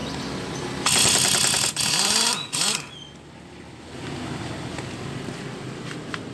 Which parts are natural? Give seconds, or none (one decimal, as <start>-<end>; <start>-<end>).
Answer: 0.0-3.8

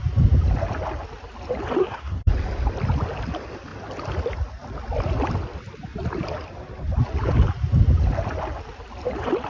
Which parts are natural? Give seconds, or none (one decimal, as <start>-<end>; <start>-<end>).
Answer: 0.0-1.8; 2.3-9.5

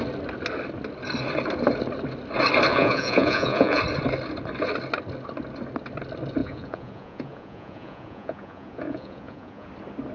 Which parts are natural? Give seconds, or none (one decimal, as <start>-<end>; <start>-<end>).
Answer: 0.0-2.7; 3.8-6.4; 9.7-10.1

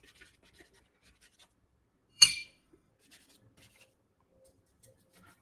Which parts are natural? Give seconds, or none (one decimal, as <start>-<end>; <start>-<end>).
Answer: 0.0-2.1; 2.9-5.4

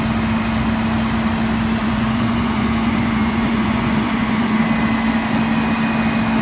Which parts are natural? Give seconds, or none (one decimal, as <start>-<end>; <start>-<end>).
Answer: 0.0-1.8; 4.6-6.4

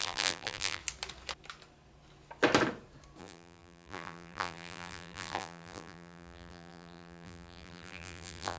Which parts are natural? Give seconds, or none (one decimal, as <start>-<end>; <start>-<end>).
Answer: 0.8-3.2

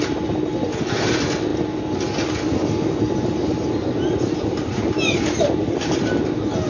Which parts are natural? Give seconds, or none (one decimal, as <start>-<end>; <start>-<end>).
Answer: 0.0-6.7

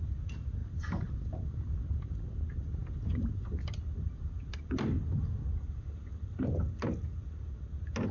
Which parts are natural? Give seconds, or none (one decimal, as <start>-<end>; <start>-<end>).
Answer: 0.0-8.1